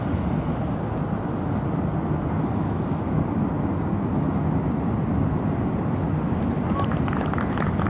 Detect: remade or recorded recorded